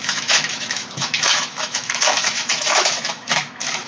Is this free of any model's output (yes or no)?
no